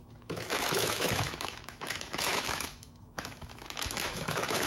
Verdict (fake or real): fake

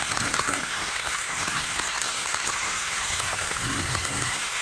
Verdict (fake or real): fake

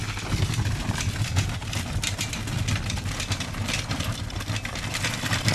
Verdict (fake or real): fake